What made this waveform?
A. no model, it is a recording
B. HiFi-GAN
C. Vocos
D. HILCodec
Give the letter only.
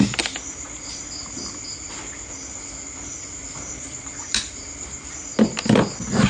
A